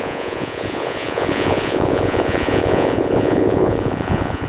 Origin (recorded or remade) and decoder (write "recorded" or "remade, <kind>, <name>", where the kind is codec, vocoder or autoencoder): remade, vocoder, Vocos